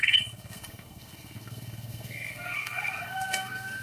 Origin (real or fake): fake